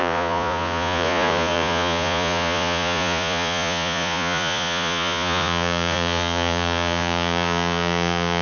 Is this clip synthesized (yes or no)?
yes